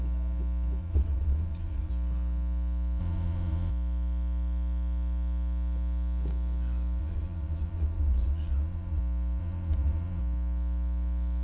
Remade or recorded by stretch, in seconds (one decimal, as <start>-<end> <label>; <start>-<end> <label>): 0.0-0.8 recorded; 0.8-1.9 remade; 1.9-3.0 recorded; 3.0-3.7 remade; 3.7-7.0 recorded; 7.0-9.0 remade; 9.0-9.4 recorded; 9.4-10.2 remade; 10.2-11.4 recorded